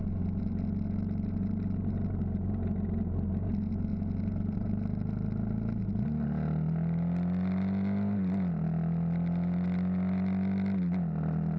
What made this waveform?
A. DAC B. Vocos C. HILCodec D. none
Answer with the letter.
D